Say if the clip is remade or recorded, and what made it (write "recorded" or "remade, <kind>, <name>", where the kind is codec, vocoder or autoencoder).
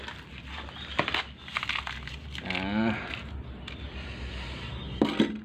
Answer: recorded